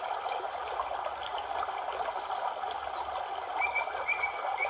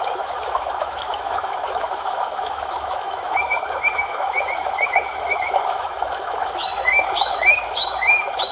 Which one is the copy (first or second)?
second